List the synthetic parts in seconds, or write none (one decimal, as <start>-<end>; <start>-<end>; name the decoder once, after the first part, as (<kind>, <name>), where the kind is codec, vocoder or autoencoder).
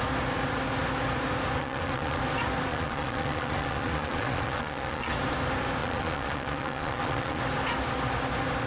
1.6-2.2 (vocoder, Vocos); 2.7-5.1; 5.8-7.4